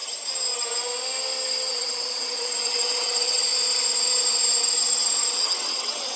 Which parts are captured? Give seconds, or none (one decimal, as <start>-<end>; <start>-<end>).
0.0-1.7; 3.5-4.6